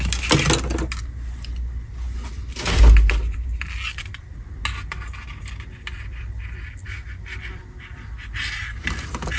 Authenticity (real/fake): real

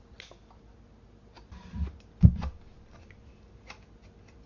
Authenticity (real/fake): real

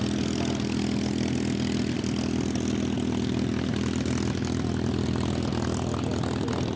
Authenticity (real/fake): real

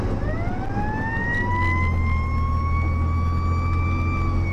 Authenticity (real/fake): real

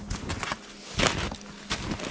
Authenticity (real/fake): real